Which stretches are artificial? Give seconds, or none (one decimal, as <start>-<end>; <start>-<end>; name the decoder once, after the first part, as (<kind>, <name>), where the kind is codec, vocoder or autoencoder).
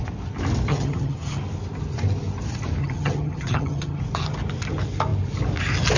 0.7-1.4 (vocoder, HiFi-GAN); 2.8-4.0